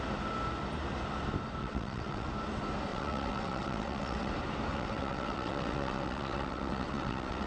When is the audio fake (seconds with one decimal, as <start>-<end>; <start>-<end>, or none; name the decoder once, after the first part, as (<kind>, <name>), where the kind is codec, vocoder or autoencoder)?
1.6-2.3 (vocoder, WaveNeXt); 2.9-4.3; 4.7-7.5